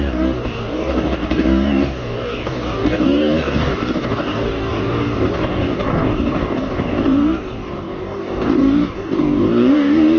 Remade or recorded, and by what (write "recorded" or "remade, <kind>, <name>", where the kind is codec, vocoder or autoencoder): remade, codec, DAC